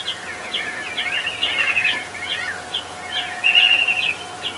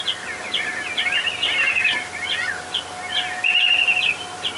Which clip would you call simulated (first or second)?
first